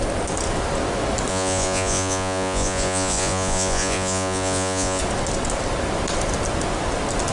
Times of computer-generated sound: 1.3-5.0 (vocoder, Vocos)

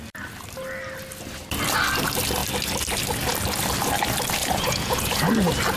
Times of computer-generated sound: 4.4-5.2 (vocoder, Vocos)

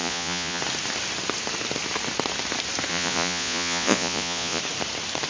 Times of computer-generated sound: 0.0-0.6 (vocoder, Vocos); 2.9-4.6